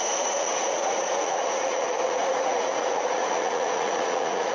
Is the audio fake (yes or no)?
yes